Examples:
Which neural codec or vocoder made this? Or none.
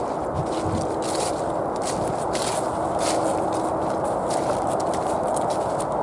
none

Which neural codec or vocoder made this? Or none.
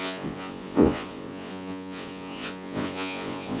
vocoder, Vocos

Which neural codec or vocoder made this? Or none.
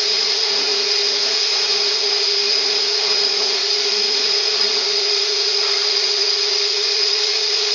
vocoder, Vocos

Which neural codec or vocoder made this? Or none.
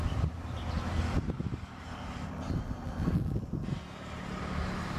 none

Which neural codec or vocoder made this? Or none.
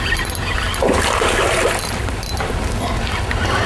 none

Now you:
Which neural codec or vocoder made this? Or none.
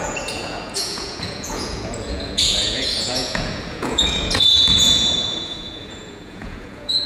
vocoder, Vocos